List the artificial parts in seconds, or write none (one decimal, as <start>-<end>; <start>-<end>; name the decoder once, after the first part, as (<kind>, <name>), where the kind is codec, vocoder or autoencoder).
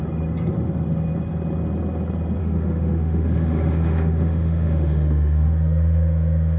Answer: 2.4-6.6 (autoencoder, DAC-VAE)